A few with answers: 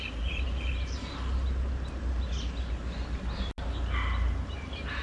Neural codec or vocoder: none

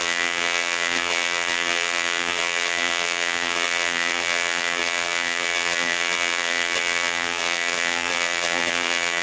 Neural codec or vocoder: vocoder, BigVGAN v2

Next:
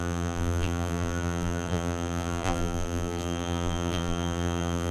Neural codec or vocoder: vocoder, BigVGAN v2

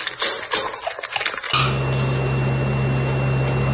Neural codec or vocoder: none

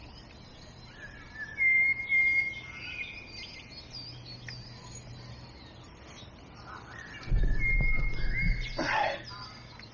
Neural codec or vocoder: none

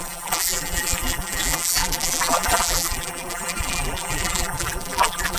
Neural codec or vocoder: vocoder, BigVGAN v2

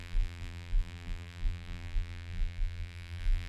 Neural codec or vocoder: vocoder, BigVGAN v2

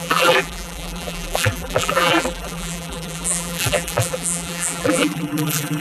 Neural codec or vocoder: vocoder, BigVGAN v2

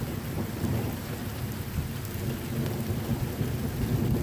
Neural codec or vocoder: none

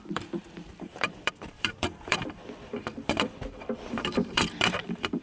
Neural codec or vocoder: vocoder, BigVGAN v2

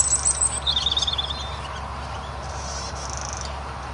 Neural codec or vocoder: none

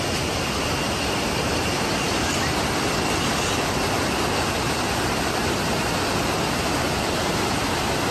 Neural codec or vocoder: none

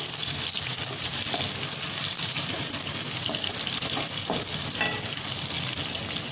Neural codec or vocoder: none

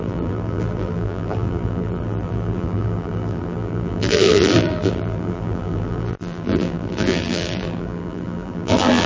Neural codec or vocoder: vocoder, BigVGAN v2